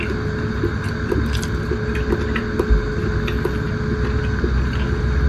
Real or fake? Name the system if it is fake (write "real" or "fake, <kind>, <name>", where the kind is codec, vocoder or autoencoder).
real